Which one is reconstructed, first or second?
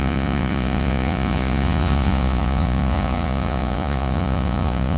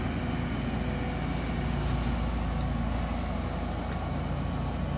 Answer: first